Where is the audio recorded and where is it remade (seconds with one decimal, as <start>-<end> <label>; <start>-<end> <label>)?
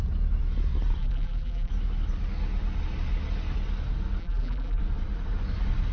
0.0-1.0 recorded; 1.0-1.7 remade; 1.7-4.2 recorded; 4.2-4.8 remade; 4.8-5.9 recorded